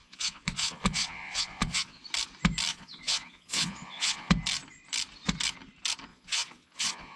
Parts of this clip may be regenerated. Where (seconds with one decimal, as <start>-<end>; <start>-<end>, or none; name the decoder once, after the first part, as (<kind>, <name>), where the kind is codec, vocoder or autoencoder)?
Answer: 0.0-2.0 (vocoder, Vocos); 2.7-4.3; 6.1-7.2